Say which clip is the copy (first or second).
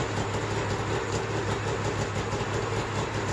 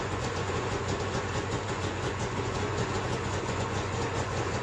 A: second